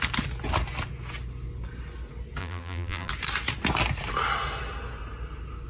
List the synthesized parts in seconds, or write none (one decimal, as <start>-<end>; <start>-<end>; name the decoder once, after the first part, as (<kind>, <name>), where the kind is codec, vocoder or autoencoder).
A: 2.4-3.1 (vocoder, BigVGAN v2)